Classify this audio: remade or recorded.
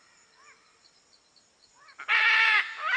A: recorded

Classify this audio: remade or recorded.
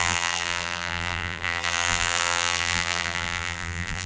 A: remade